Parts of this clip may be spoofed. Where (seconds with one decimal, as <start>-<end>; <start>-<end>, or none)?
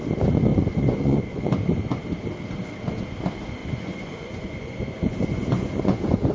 0.5-1.5; 3.6-6.3